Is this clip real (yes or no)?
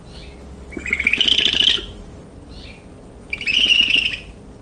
yes